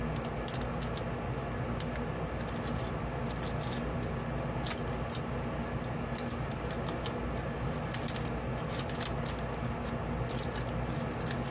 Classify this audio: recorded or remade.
recorded